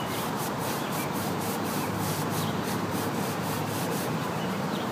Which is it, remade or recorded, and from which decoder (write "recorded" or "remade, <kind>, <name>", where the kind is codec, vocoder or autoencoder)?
remade, vocoder, BigVGAN v2